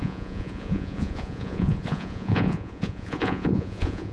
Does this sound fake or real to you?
fake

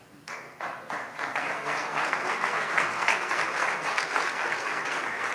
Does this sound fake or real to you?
fake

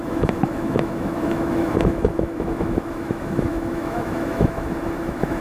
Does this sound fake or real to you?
fake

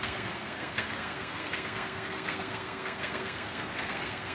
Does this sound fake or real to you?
fake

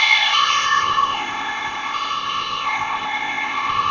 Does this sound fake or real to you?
fake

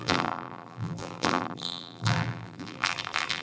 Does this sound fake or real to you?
fake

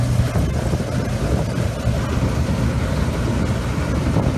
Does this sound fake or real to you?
real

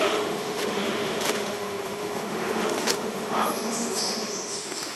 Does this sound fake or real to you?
fake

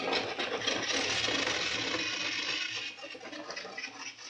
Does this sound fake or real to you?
real